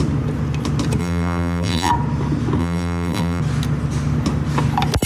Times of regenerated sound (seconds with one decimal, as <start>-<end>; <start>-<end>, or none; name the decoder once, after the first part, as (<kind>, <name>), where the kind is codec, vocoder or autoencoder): 1.0-1.9 (vocoder, BigVGAN v2); 2.6-3.4